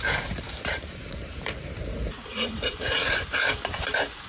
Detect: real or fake fake